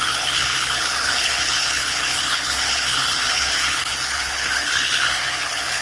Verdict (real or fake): fake